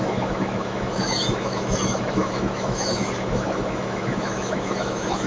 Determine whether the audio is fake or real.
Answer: fake